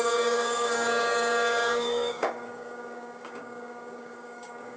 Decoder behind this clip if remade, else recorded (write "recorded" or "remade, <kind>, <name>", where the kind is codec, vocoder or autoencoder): remade, codec, DAC